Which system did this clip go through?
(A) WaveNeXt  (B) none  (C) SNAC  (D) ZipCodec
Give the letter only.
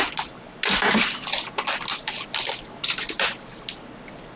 B